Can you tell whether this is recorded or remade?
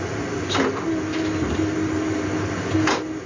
recorded